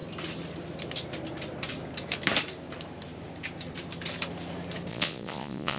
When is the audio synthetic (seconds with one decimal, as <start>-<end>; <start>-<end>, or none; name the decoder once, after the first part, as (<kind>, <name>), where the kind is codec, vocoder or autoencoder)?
4.9-5.8 (vocoder, Vocos)